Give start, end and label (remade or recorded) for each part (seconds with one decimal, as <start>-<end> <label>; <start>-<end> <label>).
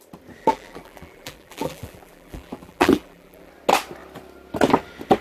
0.0-0.4 recorded; 0.4-3.5 remade; 3.5-5.2 recorded